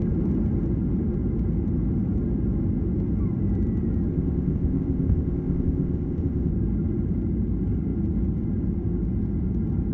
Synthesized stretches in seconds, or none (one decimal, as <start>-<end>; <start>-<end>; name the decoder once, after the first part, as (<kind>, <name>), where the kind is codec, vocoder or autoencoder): 4.1-6.5 (codec, ZipCodec)

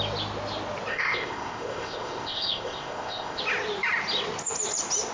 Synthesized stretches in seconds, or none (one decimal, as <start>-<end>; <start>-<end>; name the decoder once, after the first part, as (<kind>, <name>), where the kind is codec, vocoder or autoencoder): 0.9-3.4 (codec, ZipCodec)

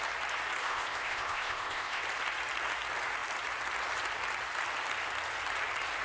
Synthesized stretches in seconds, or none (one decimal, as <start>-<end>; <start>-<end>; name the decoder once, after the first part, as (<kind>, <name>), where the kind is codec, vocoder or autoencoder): 0.6-2.0 (codec, ZipCodec)

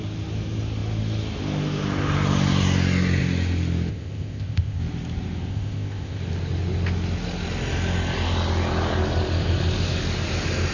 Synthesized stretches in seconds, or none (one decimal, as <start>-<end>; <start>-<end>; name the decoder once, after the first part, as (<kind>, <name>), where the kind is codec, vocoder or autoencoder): 3.9-4.8 (codec, ZipCodec); 5.5-6.2

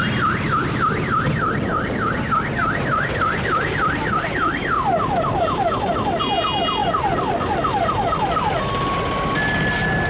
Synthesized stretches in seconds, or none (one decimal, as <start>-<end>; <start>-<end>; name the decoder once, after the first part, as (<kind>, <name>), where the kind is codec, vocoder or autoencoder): none

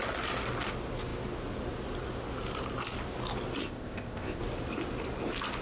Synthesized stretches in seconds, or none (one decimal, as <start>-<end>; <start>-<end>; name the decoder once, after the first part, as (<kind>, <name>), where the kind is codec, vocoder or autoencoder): 3.6-4.4 (codec, ZipCodec)

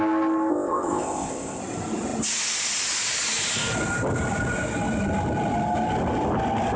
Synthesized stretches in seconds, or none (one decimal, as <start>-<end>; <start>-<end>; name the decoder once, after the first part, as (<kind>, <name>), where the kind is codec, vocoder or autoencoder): 0.5-1.6 (codec, ZipCodec)